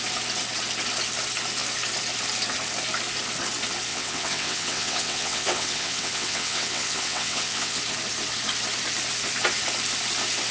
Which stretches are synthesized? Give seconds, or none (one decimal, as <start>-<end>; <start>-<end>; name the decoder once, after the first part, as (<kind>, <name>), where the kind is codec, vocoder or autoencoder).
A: 3.9-7.8 (vocoder, WaveNeXt)